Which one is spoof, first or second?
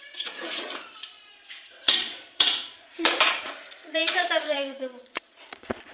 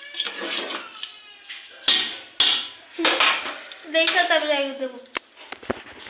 first